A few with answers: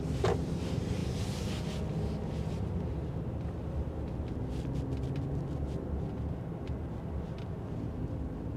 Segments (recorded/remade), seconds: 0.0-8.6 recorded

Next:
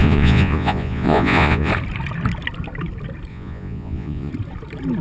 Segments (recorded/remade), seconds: 0.0-1.7 remade; 1.7-3.3 recorded; 3.3-4.3 remade; 4.3-5.0 recorded

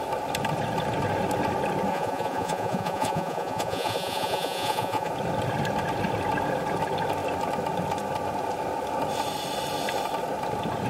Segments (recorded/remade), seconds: 0.0-1.9 recorded; 1.9-5.1 remade; 5.1-10.9 recorded

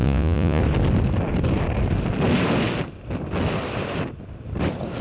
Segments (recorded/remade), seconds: 0.0-0.6 remade; 0.6-5.0 recorded